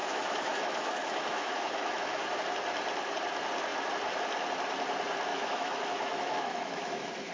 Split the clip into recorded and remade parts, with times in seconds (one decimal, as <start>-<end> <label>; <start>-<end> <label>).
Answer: 0.0-2.4 remade; 2.4-5.3 recorded; 5.3-7.3 remade